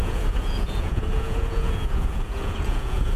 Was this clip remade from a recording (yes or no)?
yes